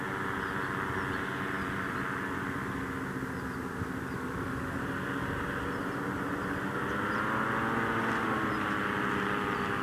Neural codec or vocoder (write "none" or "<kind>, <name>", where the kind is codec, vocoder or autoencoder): none